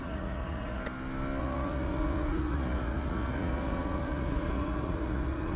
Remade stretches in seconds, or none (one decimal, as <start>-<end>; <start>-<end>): 0.0-0.8; 1.4-5.6